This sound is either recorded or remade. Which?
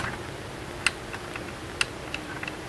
recorded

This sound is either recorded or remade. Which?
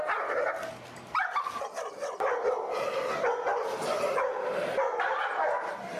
recorded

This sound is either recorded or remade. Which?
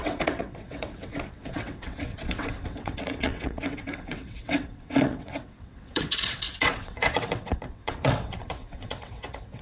remade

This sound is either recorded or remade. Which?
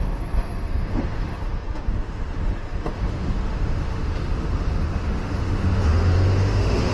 remade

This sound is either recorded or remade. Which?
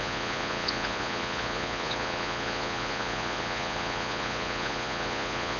remade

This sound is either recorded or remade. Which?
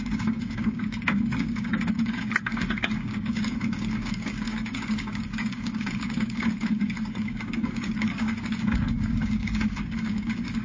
remade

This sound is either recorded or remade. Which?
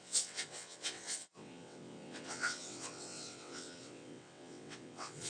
remade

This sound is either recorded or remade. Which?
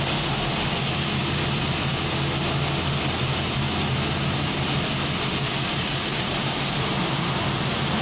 recorded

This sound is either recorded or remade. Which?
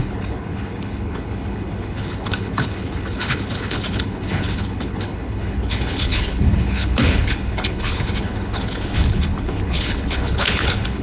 remade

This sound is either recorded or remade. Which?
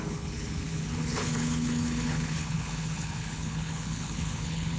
remade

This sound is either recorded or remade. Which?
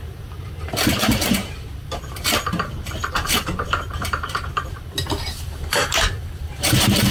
remade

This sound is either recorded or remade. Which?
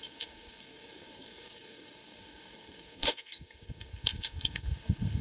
remade